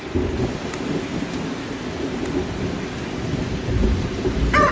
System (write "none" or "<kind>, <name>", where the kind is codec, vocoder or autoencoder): none